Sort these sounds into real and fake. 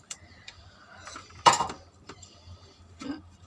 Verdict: fake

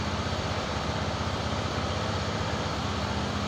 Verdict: fake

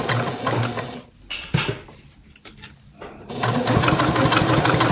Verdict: real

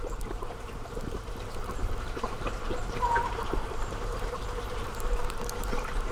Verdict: fake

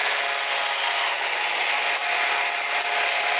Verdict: real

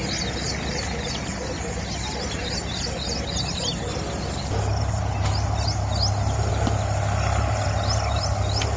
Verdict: real